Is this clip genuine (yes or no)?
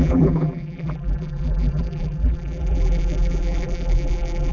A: no